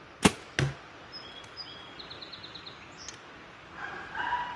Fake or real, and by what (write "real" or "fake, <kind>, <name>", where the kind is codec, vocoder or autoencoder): real